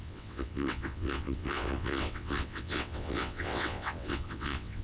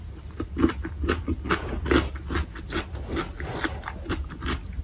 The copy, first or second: first